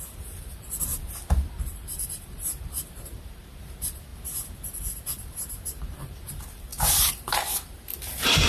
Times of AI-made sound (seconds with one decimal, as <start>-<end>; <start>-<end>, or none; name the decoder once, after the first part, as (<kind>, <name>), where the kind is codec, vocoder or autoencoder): 0.0-0.9 (vocoder, BigVGAN v2); 1.5-8.5

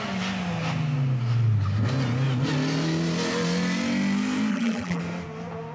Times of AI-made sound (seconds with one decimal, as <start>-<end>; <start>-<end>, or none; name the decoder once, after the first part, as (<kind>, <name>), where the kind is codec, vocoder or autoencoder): 4.5-5.0 (vocoder, BigVGAN v2)

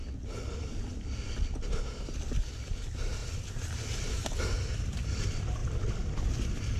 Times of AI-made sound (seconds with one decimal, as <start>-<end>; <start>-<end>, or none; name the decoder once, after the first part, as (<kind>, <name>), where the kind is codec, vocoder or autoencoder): 3.2-4.4 (vocoder, BigVGAN v2); 5.6-6.8